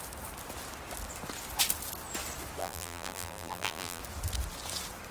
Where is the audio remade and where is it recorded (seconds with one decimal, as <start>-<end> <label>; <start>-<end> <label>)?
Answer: 0.0-2.6 recorded; 2.6-4.0 remade; 4.0-5.1 recorded